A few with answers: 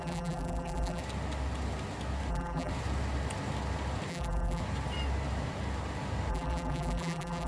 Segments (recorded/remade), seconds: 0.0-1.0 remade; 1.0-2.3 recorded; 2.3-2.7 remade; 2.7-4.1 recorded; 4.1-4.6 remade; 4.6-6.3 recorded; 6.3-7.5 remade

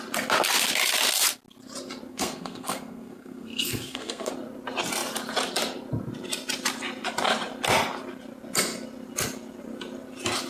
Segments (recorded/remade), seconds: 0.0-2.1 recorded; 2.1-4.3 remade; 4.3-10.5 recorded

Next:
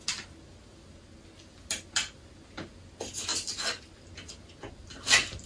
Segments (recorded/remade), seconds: 0.0-5.5 recorded

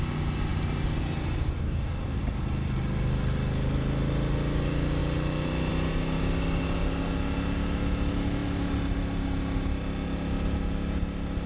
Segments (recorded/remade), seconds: 0.0-1.6 recorded; 1.6-2.2 remade; 2.2-11.5 recorded

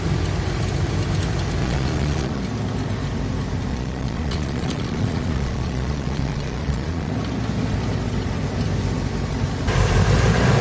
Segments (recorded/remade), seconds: 0.0-1.6 recorded; 1.6-2.4 remade; 2.4-3.7 recorded; 3.7-7.1 remade; 7.1-10.6 recorded

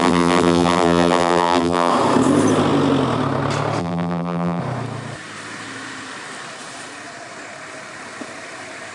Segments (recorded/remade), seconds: 0.0-1.9 remade; 1.9-3.8 recorded; 3.8-4.6 remade; 4.6-8.9 recorded

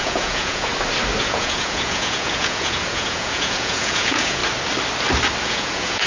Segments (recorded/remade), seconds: 0.0-0.7 remade; 0.7-1.2 recorded; 1.2-4.4 remade; 4.4-5.4 recorded; 5.4-6.1 remade